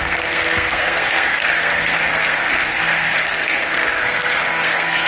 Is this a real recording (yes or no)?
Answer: no